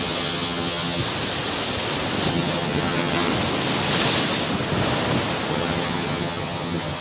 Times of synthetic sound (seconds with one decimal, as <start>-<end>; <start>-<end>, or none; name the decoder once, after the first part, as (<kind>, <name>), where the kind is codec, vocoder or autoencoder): 0.0-1.0 (vocoder, HiFi-GAN); 2.3-3.3; 5.5-7.0